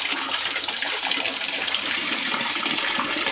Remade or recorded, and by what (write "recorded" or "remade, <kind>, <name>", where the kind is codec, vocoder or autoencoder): remade, vocoder, BigVGAN v2